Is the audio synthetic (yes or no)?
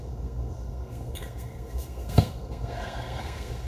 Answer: yes